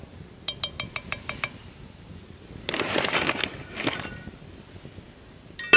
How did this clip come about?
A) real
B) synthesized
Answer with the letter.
A